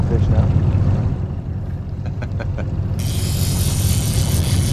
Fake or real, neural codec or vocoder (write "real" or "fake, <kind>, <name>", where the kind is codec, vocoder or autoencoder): fake, vocoder, BigVGAN v2